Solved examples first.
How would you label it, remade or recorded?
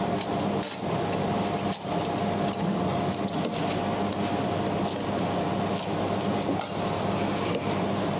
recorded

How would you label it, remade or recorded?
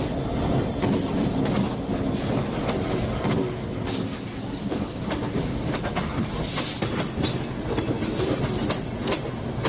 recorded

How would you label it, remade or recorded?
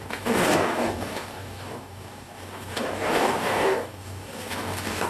remade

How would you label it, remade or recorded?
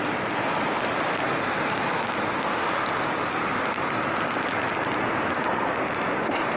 recorded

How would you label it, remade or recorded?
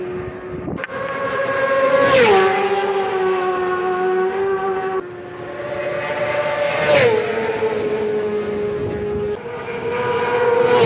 recorded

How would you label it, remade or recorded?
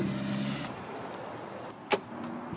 recorded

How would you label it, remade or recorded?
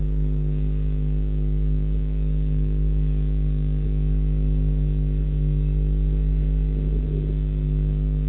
remade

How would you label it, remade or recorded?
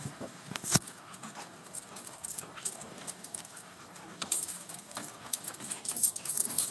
remade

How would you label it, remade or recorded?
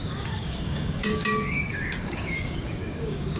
remade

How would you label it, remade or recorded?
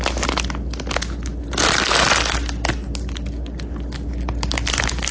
recorded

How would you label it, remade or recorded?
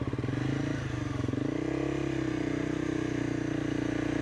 recorded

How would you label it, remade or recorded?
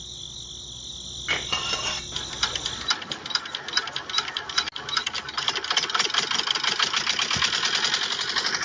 recorded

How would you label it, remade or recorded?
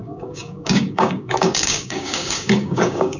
remade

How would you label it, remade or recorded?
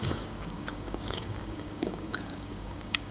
remade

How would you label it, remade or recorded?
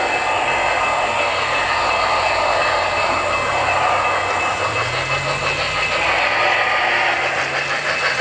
recorded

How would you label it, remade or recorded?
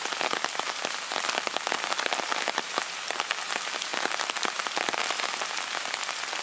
recorded